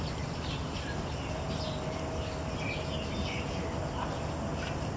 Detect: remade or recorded recorded